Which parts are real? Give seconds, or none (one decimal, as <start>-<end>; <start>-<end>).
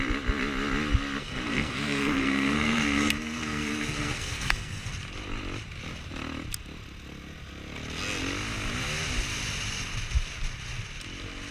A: 0.0-1.2; 4.9-11.5